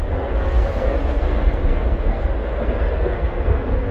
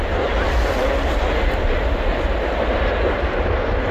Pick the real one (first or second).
second